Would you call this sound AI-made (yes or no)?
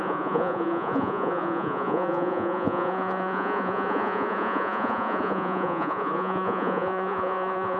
yes